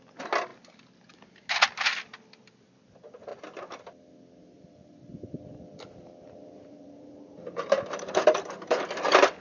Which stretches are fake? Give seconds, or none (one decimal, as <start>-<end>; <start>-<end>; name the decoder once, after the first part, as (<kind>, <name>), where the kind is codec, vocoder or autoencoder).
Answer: 4.4-9.0 (vocoder, BigVGAN v2)